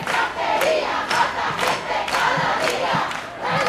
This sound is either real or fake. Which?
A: real